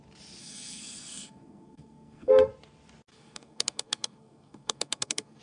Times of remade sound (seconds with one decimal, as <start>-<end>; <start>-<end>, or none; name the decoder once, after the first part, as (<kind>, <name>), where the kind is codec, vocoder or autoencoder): 0.4-2.5 (codec, SNAC); 3.1-5.4